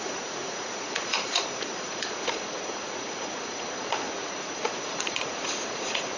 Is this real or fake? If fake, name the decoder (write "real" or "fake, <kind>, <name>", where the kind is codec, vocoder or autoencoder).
fake, vocoder, Vocos